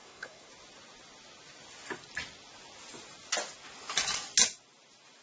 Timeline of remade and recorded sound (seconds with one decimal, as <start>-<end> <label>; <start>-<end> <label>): 0.0-0.5 remade; 0.5-5.2 recorded

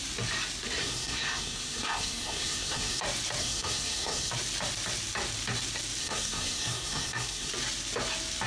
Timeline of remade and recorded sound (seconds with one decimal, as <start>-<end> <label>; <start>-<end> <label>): 0.0-0.8 recorded; 0.8-3.0 remade; 3.0-3.4 recorded; 3.4-4.3 remade; 4.3-6.0 recorded; 6.0-7.5 remade; 7.5-8.5 recorded

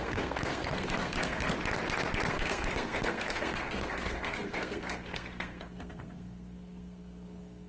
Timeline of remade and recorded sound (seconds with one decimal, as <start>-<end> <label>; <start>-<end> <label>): 0.0-1.5 remade; 1.5-2.3 recorded; 2.3-7.7 remade

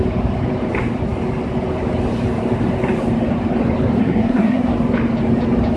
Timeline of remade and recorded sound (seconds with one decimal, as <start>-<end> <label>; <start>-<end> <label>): 0.0-4.0 recorded; 4.0-4.7 remade; 4.7-5.8 recorded

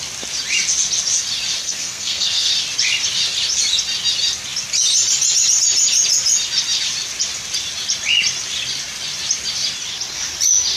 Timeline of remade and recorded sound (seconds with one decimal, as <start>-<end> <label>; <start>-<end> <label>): 0.0-1.6 recorded; 1.6-2.5 remade; 2.5-10.8 recorded

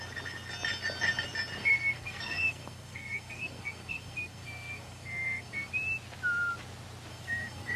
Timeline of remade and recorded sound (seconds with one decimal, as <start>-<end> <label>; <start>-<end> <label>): 0.0-1.6 recorded; 1.6-5.7 remade; 5.7-7.1 recorded; 7.1-7.8 remade

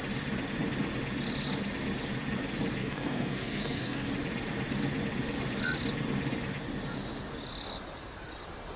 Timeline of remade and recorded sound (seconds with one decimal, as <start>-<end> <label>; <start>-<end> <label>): 0.0-2.8 recorded; 2.8-4.1 remade; 4.1-8.8 recorded